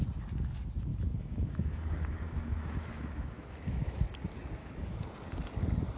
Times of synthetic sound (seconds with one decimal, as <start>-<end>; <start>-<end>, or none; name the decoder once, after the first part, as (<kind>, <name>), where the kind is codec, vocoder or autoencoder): 0.9-4.0 (autoencoder, DAC-VAE); 4.6-5.1